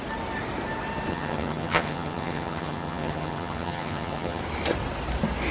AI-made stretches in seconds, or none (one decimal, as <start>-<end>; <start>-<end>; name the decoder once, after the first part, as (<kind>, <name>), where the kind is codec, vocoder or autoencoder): 1.1-4.4 (vocoder, HiFi-GAN)